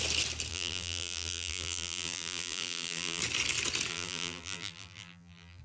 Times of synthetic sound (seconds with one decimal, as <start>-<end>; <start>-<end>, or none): 0.5-3.2; 3.9-5.6